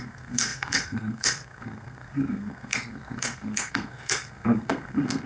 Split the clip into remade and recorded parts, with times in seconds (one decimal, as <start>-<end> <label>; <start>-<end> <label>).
0.0-5.3 remade

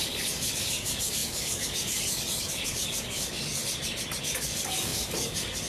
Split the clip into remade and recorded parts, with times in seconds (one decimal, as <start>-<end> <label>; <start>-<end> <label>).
0.0-3.6 remade; 3.6-4.2 recorded; 4.2-5.7 remade

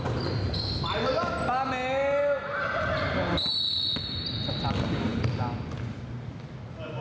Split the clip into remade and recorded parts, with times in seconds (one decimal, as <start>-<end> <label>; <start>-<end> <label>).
0.0-7.0 recorded